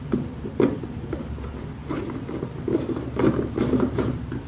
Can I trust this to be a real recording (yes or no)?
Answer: yes